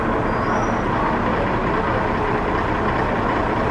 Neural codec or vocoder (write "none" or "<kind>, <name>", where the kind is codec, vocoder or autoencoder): none